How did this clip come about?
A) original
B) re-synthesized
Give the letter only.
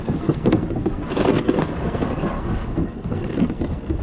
B